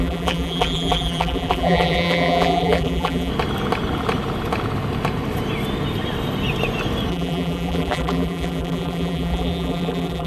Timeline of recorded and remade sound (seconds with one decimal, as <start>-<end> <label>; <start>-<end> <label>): 0.0-3.3 remade; 3.3-7.1 recorded; 7.1-10.3 remade